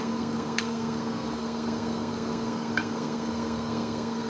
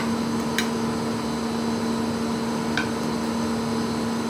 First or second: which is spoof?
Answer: first